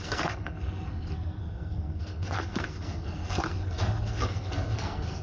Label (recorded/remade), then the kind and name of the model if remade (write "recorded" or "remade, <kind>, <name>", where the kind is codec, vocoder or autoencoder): remade, codec, SNAC